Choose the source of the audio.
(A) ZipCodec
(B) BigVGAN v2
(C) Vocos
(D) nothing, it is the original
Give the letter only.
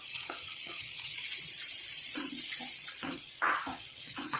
C